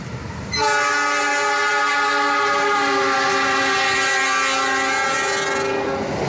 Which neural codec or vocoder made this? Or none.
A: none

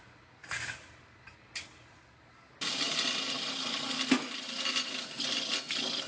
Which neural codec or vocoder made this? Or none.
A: none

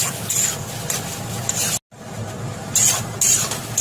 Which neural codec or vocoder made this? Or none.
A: none